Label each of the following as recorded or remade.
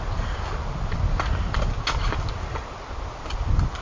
recorded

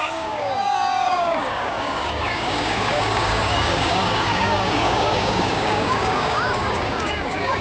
remade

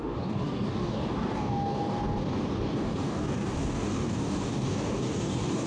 remade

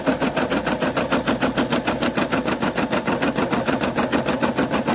recorded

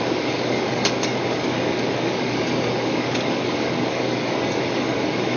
remade